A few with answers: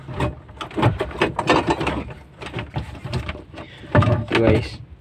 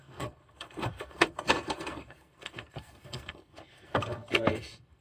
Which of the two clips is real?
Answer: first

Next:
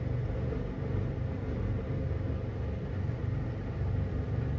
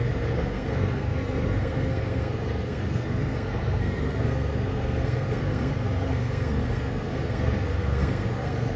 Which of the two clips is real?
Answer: first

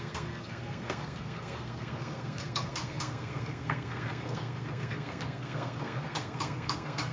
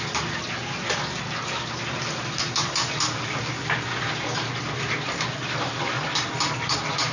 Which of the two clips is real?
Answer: second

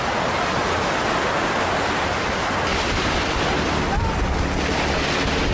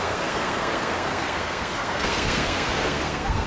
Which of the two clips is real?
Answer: first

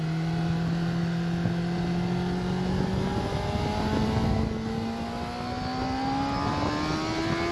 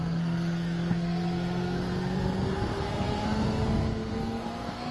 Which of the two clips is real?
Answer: first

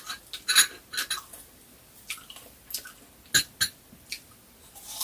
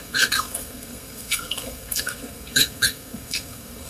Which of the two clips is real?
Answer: first